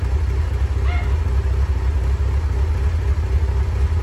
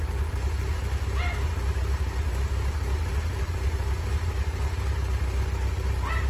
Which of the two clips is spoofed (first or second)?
second